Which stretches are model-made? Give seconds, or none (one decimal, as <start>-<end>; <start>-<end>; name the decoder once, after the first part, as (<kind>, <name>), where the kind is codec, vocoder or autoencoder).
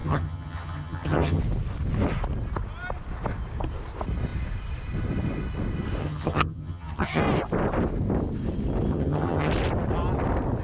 0.0-1.4 (vocoder, HiFi-GAN); 6.0-7.2; 8.9-9.5